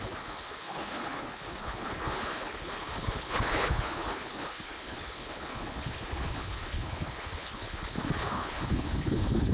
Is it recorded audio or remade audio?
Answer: remade